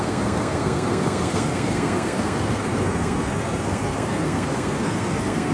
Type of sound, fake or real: fake